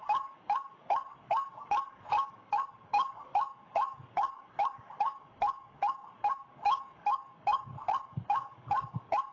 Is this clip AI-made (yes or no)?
yes